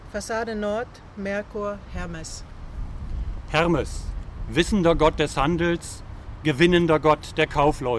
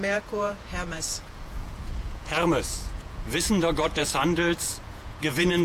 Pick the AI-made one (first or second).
second